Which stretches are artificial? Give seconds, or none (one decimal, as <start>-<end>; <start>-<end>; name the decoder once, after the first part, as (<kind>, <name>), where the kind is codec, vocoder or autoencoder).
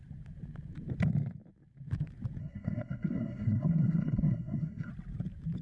2.4-4.9 (codec, SNAC)